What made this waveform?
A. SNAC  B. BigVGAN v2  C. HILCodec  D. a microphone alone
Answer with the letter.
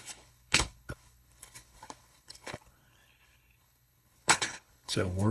C